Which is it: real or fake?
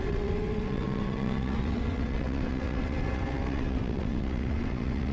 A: fake